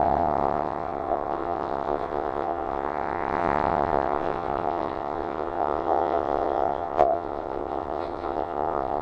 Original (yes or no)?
no